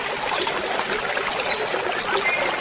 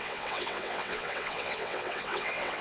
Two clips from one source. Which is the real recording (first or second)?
first